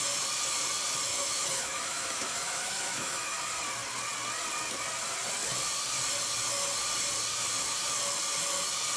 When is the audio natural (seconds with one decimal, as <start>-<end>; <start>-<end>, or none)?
0.0-1.1; 3.4-9.0